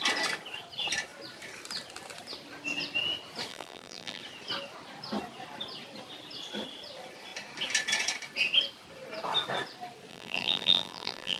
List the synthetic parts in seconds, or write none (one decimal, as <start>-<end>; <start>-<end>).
3.5-4.2; 10.1-11.4